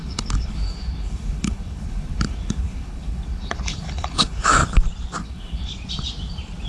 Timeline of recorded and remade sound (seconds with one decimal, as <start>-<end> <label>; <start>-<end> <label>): 0.0-4.6 remade; 4.6-5.2 recorded; 5.2-5.7 remade; 5.7-6.7 recorded